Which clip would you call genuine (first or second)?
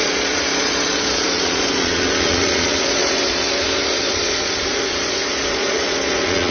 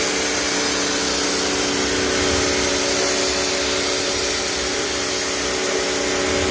second